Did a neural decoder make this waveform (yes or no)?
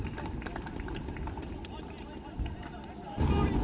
no